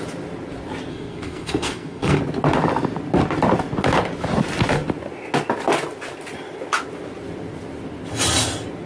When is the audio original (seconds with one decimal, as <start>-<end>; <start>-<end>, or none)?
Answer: 0.0-0.9; 2.2-8.9